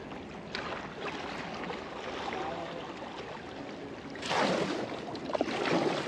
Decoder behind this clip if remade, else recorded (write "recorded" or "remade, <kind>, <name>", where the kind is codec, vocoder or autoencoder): recorded